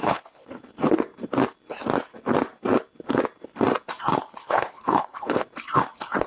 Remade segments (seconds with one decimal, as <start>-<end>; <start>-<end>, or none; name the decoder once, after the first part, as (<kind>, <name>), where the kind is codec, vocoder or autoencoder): 0.0-0.6 (codec, HILCodec); 4.4-5.4